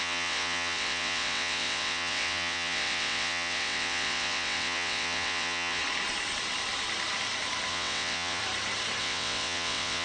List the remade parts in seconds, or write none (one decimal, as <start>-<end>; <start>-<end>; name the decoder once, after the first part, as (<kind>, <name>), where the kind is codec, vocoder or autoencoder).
0.0-5.8 (vocoder, WaveNeXt); 7.7-8.4; 9.0-10.0